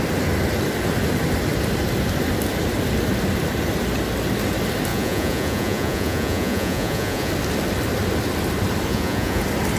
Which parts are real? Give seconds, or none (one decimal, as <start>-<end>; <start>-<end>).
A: 0.0-4.9; 7.3-8.9; 9.4-9.8